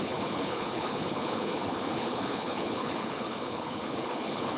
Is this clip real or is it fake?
fake